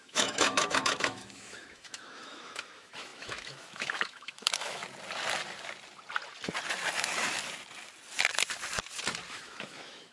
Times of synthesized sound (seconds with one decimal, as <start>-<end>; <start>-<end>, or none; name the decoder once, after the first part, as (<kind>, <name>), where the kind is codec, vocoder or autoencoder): 0.0-4.8 (autoencoder, DAC-VAE); 9.3-10.1